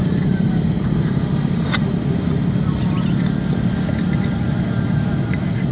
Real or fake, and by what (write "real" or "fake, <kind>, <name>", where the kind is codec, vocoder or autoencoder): fake, vocoder, BigVGAN v2